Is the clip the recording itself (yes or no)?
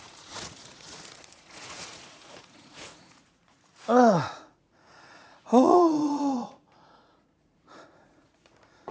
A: no